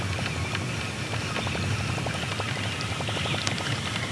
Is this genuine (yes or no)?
yes